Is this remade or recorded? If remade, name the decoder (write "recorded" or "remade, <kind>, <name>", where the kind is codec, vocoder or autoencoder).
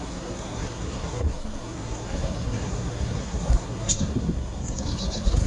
remade, codec, SNAC